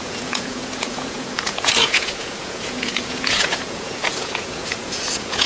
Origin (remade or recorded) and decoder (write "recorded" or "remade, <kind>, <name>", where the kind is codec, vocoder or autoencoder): remade, vocoder, Vocos